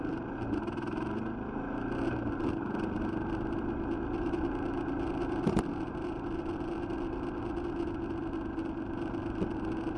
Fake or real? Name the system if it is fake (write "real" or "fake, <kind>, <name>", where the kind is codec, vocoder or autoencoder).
real